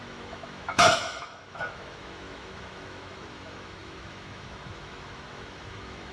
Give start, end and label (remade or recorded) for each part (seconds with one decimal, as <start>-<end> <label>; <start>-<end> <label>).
0.0-6.1 remade